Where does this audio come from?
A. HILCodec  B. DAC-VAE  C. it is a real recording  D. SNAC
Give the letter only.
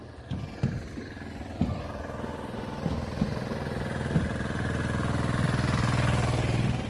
C